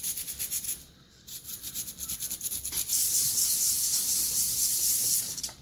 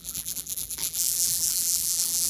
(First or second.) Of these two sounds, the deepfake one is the second